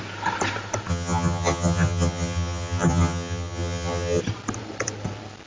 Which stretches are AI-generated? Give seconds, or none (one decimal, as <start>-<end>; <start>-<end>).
0.9-4.2